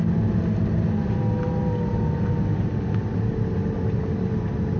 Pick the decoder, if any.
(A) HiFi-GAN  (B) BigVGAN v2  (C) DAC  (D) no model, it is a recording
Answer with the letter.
D